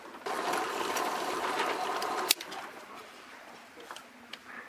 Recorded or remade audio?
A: recorded